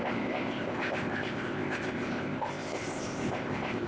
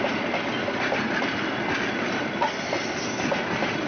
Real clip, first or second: second